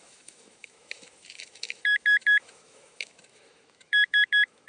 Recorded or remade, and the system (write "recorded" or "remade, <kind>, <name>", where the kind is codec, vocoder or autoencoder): remade, autoencoder, DAC-VAE